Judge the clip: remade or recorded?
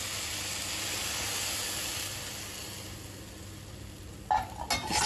recorded